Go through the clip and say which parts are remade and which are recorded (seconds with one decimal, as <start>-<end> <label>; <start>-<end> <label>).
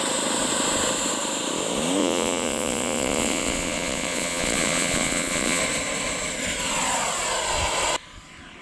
0.0-2.0 recorded; 2.0-5.6 remade; 5.6-8.6 recorded